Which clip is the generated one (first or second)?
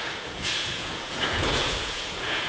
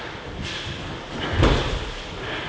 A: first